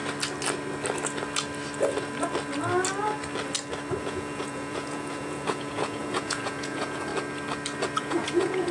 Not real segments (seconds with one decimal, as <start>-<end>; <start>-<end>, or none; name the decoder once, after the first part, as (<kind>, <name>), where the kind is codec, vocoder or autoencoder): 4.0-7.1 (vocoder, Vocos); 8.0-8.7